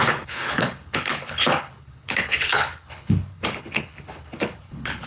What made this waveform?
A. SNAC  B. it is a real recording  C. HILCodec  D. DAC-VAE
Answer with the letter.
C